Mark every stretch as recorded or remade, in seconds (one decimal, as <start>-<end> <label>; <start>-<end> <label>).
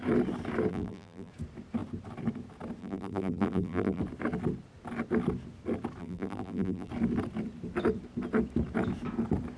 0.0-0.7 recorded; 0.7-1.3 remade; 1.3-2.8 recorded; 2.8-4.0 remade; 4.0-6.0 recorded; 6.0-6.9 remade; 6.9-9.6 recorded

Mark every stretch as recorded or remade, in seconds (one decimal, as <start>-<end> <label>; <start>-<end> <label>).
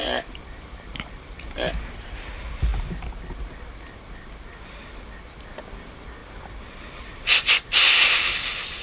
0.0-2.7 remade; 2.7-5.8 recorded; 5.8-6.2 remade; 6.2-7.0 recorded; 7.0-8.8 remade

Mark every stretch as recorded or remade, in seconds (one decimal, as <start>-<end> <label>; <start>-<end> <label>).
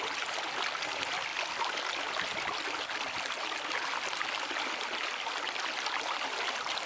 0.0-6.9 recorded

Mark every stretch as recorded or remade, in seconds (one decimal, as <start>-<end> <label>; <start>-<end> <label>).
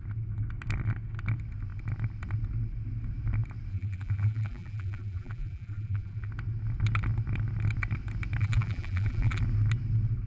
0.0-3.7 recorded; 3.7-6.3 remade; 6.3-8.4 recorded; 8.4-9.4 remade; 9.4-10.3 recorded